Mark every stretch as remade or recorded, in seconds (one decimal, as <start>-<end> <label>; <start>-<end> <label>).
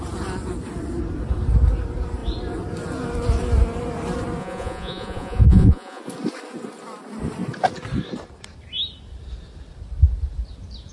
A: 0.0-4.4 recorded; 4.4-6.0 remade; 6.0-10.9 recorded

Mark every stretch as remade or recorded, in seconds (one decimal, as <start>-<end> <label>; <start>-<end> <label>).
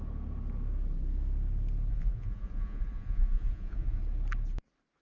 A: 0.0-1.9 recorded; 1.9-4.0 remade; 4.0-5.0 recorded